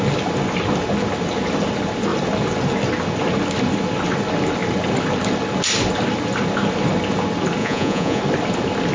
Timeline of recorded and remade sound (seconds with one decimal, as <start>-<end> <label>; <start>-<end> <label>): 0.0-7.6 recorded; 7.6-8.2 remade; 8.2-8.9 recorded

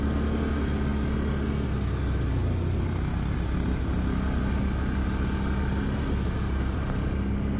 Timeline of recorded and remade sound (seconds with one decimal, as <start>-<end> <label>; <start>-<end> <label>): 0.0-7.6 recorded

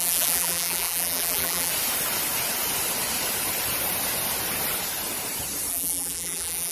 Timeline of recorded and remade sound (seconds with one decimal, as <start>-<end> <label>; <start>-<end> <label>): 0.0-1.7 remade; 1.7-5.7 recorded; 5.7-6.7 remade

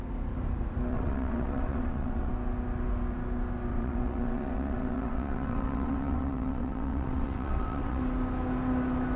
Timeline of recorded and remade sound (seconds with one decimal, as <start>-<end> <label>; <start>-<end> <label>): 0.0-0.9 recorded; 0.9-2.3 remade; 2.3-3.7 recorded; 3.7-8.0 remade; 8.0-9.2 recorded

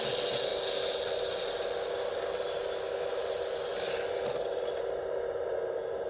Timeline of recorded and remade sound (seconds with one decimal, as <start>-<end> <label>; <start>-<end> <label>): 0.0-6.1 recorded